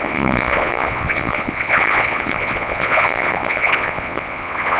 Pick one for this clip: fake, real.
fake